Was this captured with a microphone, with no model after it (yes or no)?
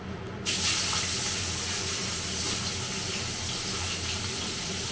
yes